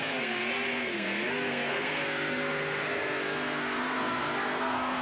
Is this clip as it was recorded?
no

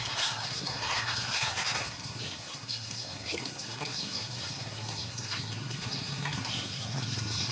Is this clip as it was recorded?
no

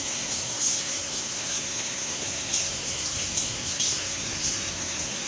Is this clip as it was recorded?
no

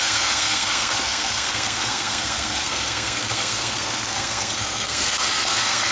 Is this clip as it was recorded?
no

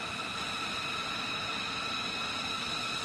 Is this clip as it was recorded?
yes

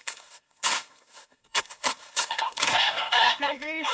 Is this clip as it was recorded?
no